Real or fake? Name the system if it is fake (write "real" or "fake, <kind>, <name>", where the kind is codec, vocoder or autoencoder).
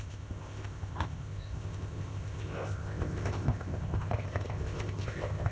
fake, codec, ZipCodec